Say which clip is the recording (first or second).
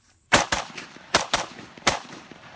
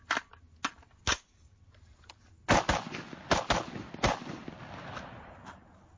second